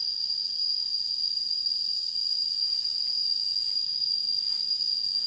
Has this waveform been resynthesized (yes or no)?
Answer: no